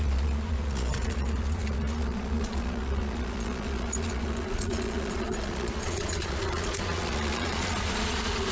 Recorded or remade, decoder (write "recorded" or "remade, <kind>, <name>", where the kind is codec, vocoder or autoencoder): remade, vocoder, Vocos